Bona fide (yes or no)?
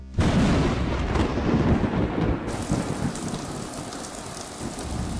yes